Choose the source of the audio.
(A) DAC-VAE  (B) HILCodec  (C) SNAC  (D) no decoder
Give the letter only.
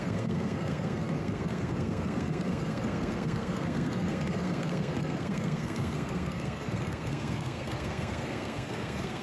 C